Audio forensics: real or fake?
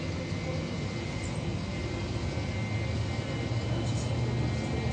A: real